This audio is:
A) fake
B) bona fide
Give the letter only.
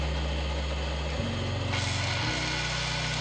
B